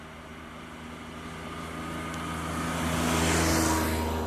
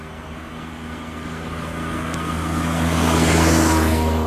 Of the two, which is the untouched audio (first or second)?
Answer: first